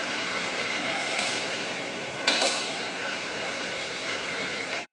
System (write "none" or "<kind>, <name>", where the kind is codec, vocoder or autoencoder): codec, SNAC